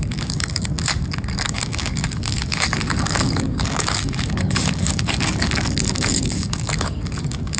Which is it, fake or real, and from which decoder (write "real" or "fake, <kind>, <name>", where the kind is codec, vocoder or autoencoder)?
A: fake, codec, DAC